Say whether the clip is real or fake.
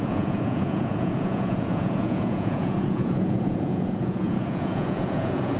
fake